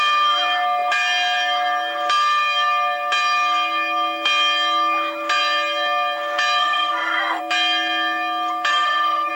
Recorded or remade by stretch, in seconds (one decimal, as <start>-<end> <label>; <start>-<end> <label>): 0.0-6.6 recorded; 6.6-7.4 remade; 7.4-8.7 recorded; 8.7-9.3 remade